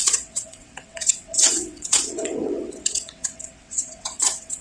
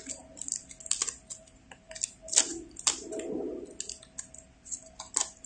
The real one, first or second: second